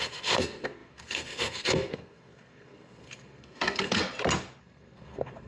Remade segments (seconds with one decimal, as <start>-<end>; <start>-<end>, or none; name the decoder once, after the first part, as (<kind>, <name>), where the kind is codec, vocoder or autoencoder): 0.0-4.0 (codec, SNAC); 4.6-5.5